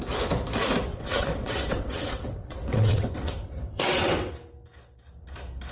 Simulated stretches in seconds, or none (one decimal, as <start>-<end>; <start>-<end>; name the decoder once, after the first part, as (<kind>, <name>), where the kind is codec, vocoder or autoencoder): 0.9-4.3 (vocoder, WaveNeXt)